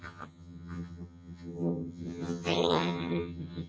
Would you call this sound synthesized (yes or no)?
yes